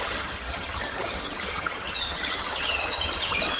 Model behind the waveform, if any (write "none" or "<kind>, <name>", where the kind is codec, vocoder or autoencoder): vocoder, HiFi-GAN